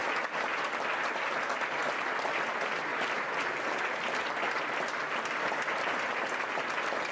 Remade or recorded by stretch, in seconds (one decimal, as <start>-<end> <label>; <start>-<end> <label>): 0.0-2.9 recorded; 2.9-4.0 remade; 4.0-7.1 recorded